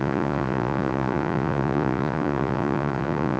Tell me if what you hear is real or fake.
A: fake